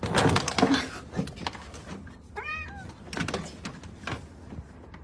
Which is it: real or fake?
real